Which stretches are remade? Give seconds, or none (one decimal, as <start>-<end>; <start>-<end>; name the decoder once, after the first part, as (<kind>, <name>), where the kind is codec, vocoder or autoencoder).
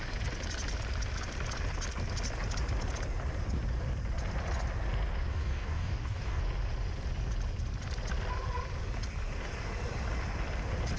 5.3-6.4 (codec, DAC)